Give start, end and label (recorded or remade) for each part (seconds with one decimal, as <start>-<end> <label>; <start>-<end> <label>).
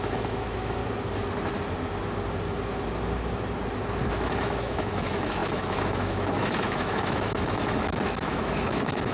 0.0-0.8 remade; 0.8-4.1 recorded; 4.1-9.1 remade